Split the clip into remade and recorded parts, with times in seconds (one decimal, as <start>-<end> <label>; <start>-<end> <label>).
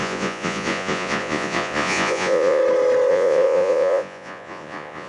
0.0-2.6 remade; 2.6-3.1 recorded; 3.1-5.1 remade